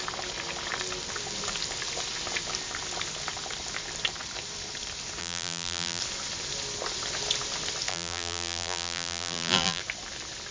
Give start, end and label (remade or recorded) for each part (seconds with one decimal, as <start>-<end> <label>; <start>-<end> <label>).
0.0-5.2 recorded; 5.2-6.0 remade; 6.0-7.9 recorded; 7.9-9.8 remade; 9.8-10.5 recorded